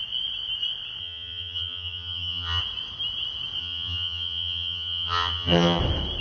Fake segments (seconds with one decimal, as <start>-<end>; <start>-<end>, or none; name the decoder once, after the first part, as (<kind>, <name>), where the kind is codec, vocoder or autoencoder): 1.0-2.6 (vocoder, HiFi-GAN); 3.6-5.8